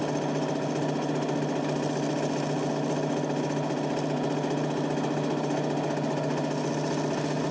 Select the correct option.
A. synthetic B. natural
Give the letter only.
B